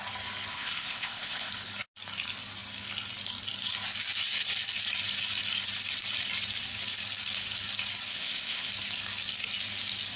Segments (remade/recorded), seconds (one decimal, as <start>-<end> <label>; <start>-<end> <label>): 0.0-0.5 recorded; 0.5-1.5 remade; 1.5-8.1 recorded; 8.1-8.7 remade; 8.7-10.2 recorded